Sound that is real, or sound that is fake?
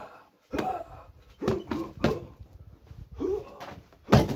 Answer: real